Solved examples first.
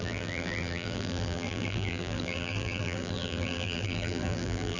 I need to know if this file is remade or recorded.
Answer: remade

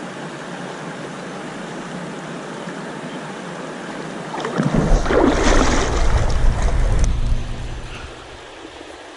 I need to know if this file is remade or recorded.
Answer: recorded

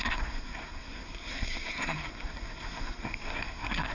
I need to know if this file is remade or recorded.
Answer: remade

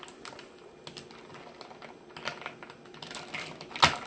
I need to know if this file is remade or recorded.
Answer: recorded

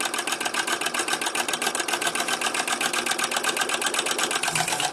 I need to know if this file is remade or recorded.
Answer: recorded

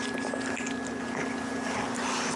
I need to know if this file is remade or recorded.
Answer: recorded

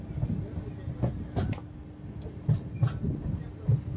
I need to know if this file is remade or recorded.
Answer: recorded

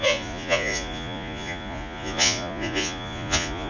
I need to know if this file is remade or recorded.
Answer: remade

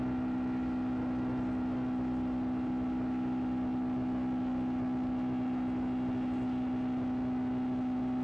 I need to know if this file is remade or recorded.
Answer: recorded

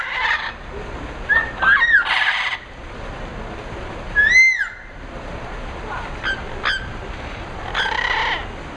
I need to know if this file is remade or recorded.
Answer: recorded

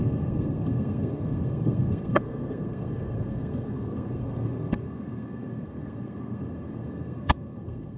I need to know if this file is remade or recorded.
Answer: remade